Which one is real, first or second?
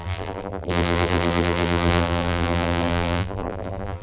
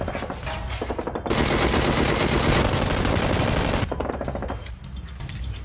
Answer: second